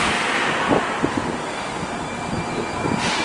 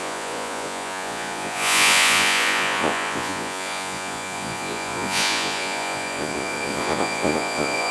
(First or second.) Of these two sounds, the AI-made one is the second